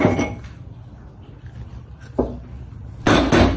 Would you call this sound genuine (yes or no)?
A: yes